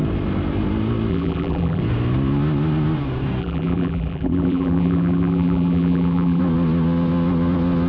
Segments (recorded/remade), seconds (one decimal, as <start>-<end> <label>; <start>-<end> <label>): 0.0-1.1 recorded; 1.1-1.8 remade; 1.8-3.4 recorded; 3.4-6.4 remade; 6.4-7.9 recorded